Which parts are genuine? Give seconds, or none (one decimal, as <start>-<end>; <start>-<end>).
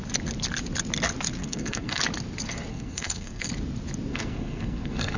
0.0-1.4; 2.0-2.7; 3.5-4.1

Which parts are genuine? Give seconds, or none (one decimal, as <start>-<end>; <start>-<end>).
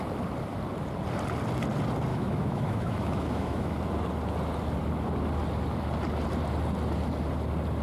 0.0-2.1; 3.8-7.8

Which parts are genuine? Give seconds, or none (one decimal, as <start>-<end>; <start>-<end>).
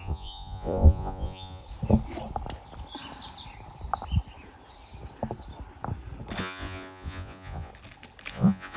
1.6-6.4; 7.7-8.3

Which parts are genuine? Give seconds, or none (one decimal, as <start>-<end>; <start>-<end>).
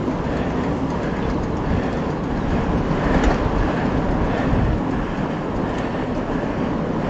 0.0-7.1